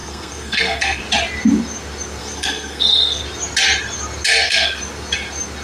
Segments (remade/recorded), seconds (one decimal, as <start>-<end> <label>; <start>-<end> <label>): 0.0-1.0 remade; 1.0-2.2 recorded; 2.2-3.2 remade; 3.2-4.3 recorded; 4.3-4.8 remade; 4.8-5.6 recorded